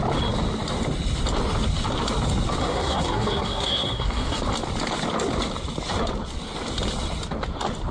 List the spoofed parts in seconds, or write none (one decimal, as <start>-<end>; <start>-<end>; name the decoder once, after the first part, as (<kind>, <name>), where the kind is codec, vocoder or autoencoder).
2.6-4.4 (codec, SNAC)